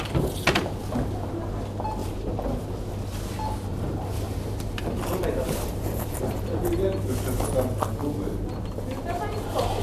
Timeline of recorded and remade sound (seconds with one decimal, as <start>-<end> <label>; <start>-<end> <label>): 0.0-2.0 recorded; 2.0-2.6 remade; 2.6-3.7 recorded; 3.7-6.7 remade; 6.7-9.8 recorded